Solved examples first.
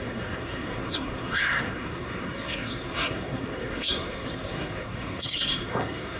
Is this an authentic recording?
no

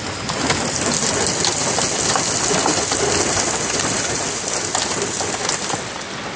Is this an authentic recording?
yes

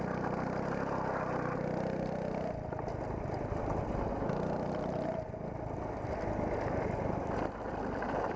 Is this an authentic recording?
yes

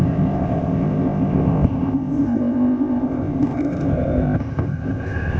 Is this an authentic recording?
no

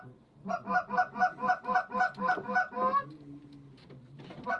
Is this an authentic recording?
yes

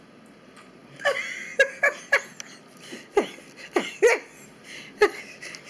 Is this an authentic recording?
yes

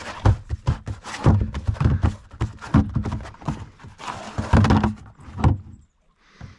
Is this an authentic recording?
yes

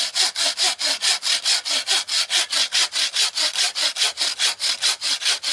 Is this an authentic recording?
yes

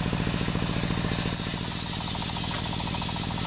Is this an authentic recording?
yes